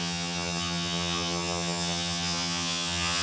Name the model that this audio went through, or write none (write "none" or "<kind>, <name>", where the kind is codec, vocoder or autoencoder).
vocoder, HiFi-GAN